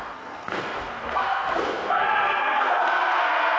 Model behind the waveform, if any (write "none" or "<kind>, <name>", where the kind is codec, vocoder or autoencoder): codec, SNAC